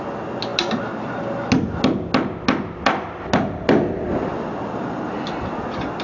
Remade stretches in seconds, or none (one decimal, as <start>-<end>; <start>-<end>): none